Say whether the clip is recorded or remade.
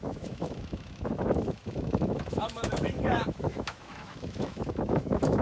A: remade